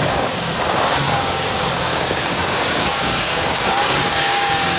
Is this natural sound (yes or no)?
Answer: no